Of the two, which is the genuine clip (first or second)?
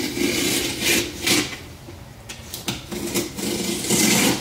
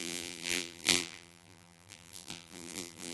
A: first